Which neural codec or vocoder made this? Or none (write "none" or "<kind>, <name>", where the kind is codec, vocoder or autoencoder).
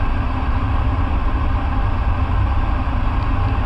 none